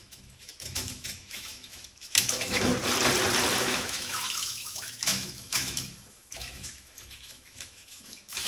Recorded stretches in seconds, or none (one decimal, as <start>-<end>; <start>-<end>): 2.7-3.6